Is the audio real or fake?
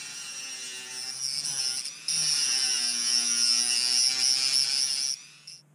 real